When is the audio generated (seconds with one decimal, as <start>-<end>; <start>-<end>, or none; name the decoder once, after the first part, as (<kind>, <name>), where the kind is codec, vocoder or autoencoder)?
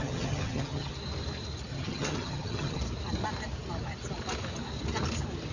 0.0-0.9 (vocoder, HiFi-GAN); 1.7-2.8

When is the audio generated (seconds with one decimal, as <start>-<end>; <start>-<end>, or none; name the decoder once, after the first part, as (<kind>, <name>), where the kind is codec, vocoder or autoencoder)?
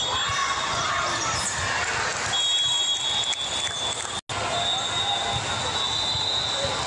0.4-0.9 (vocoder, Vocos)